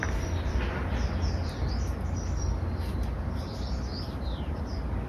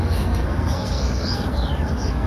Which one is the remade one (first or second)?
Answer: second